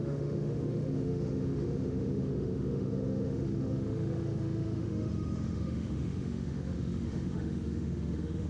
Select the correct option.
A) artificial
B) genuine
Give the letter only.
A